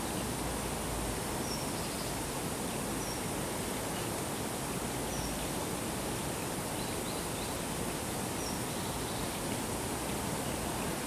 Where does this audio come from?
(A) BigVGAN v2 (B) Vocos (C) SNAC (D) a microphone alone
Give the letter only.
D